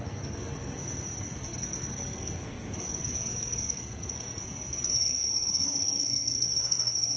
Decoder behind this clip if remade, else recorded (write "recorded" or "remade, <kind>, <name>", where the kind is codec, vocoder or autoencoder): remade, codec, SNAC